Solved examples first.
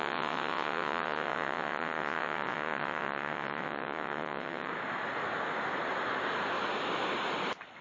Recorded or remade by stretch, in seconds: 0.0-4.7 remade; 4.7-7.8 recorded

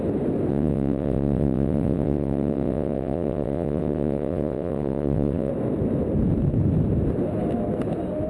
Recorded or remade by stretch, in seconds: 0.0-0.5 recorded; 0.5-5.5 remade; 5.5-8.3 recorded

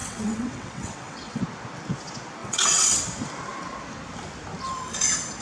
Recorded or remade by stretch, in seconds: 0.0-1.4 remade; 1.4-2.4 recorded; 2.4-3.0 remade; 3.0-5.4 recorded

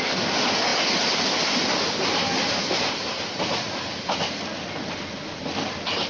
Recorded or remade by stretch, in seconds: 0.0-6.1 recorded